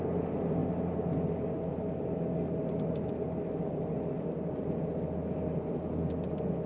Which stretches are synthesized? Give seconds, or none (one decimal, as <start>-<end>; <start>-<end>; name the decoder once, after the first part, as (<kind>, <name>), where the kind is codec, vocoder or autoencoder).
none